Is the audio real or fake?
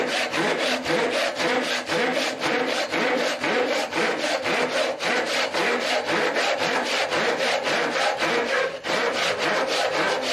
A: fake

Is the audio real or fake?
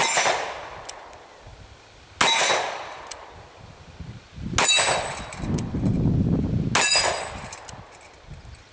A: real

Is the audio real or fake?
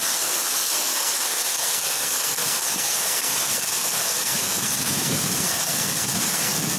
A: fake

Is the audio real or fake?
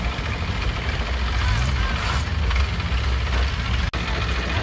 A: real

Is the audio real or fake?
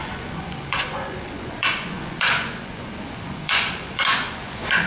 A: fake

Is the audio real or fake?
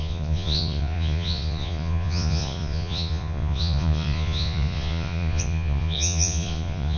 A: fake